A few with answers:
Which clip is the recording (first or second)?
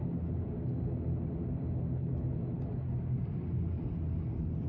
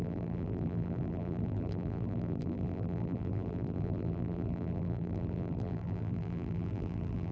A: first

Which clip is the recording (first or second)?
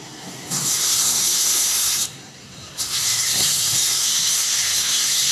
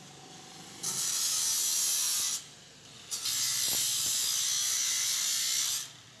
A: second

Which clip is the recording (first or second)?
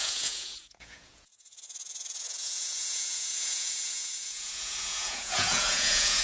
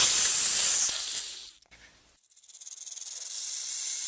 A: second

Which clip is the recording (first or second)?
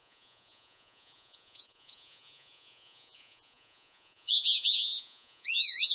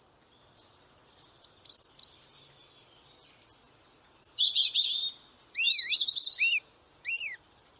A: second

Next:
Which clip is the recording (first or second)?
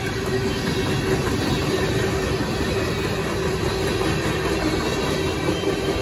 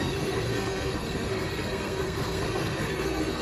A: first